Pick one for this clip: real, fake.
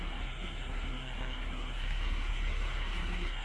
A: fake